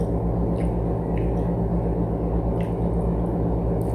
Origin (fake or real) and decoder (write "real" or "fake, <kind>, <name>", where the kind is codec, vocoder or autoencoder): real